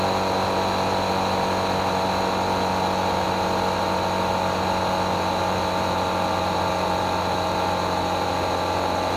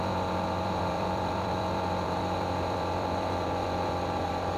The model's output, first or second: second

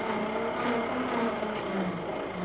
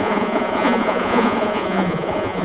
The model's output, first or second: second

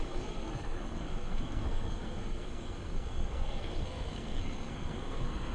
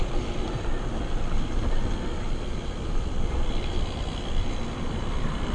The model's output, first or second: first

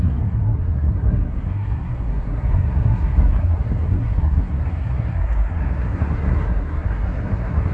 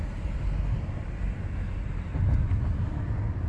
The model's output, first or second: first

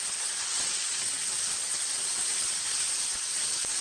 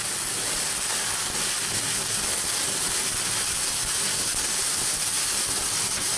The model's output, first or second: first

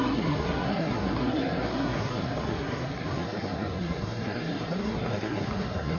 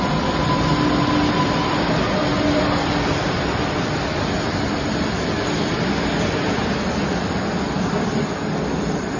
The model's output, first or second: first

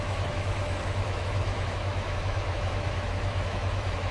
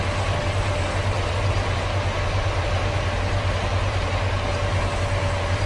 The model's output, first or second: first